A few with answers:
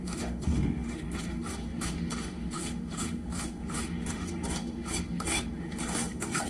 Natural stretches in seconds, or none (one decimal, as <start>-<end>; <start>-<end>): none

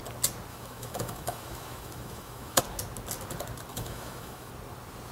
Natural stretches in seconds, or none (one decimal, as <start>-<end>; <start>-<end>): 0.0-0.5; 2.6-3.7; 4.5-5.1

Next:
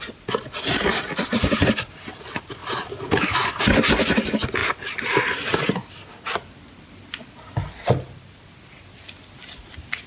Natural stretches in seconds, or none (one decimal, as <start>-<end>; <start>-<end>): 0.0-10.1

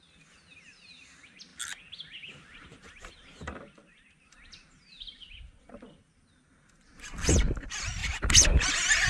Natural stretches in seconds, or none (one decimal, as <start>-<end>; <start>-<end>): 0.0-9.1

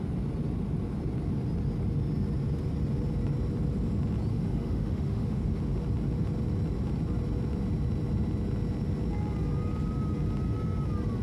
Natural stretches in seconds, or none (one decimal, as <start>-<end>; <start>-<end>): 0.0-4.3; 5.6-11.2